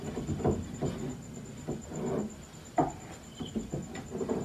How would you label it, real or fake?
real